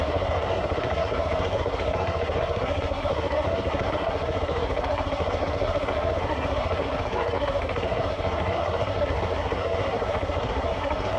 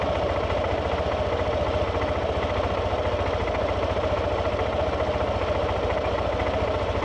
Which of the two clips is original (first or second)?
second